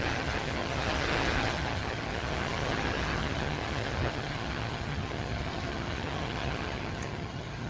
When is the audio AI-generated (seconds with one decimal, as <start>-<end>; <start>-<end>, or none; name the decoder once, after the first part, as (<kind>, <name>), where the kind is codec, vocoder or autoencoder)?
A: 0.0-7.7 (vocoder, HiFi-GAN)